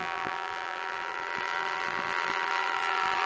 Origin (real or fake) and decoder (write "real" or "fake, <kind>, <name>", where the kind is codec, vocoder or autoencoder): fake, vocoder, BigVGAN v2